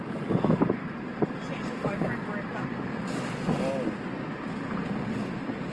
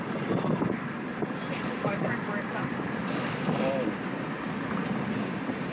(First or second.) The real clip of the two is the first